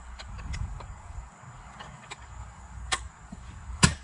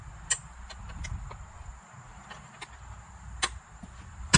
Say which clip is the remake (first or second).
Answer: first